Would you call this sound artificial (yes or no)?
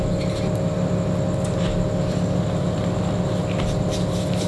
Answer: no